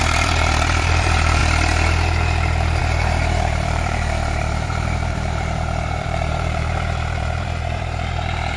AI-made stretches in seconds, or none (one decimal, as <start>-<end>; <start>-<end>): 0.0-1.4; 2.8-8.6